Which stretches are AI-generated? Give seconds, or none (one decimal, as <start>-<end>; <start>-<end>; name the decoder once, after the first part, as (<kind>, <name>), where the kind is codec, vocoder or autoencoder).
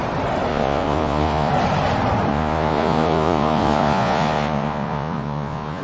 0.5-1.5 (vocoder, Vocos); 2.3-5.8